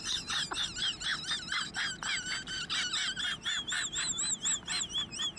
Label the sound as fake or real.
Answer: real